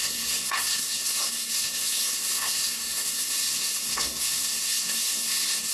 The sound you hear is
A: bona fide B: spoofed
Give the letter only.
B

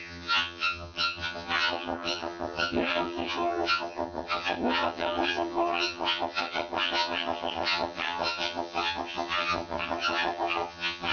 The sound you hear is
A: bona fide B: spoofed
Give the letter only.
B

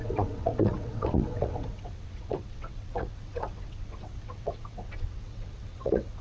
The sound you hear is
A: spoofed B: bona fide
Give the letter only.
A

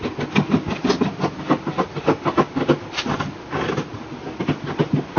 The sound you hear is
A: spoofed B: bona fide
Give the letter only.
B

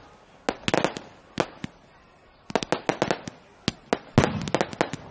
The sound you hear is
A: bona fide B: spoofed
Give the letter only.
A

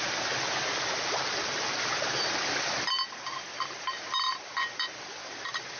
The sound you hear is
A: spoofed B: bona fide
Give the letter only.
B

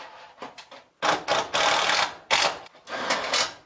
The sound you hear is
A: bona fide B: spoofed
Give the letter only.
A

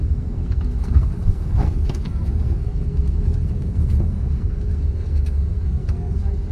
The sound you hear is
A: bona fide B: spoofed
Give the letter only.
B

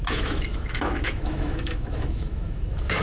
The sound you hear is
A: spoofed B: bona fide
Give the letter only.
A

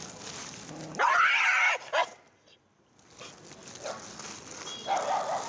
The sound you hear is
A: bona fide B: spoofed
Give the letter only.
A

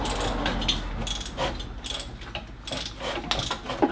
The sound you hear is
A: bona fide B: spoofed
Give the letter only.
A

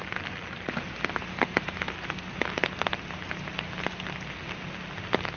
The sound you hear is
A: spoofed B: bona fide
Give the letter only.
B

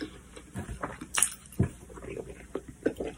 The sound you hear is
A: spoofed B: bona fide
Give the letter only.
A